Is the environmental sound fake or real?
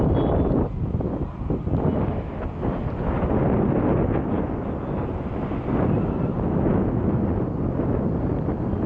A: real